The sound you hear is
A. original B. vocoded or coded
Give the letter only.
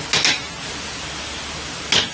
A